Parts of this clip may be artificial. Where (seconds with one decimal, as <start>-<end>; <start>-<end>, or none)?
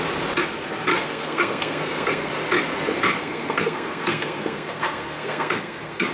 0.9-2.3; 3.2-6.1